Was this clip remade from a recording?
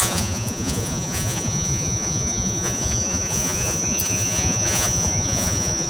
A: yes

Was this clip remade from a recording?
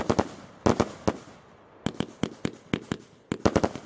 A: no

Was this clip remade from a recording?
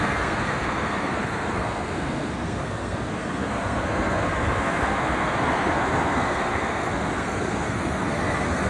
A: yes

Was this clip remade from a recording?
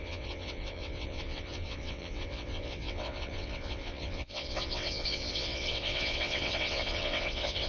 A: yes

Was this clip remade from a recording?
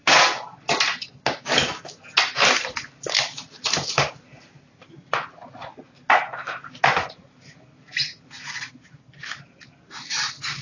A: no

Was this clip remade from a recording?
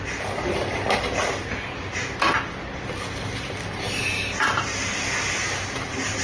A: no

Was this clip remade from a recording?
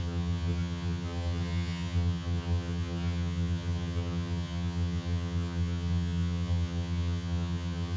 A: yes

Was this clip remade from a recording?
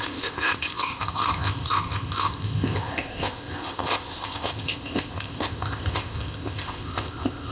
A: yes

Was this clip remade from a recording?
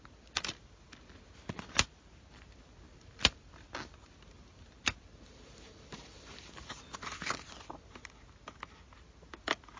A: no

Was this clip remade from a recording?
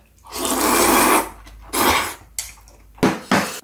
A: no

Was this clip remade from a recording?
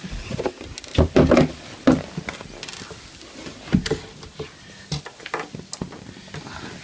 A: no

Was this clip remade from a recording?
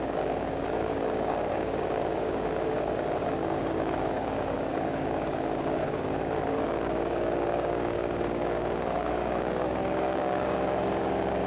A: yes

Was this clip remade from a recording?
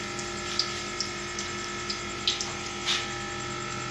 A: no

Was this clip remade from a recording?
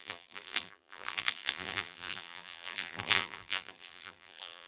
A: yes